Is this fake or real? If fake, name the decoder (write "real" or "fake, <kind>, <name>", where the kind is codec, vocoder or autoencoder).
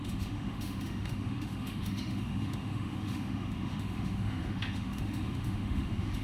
fake, autoencoder, DAC-VAE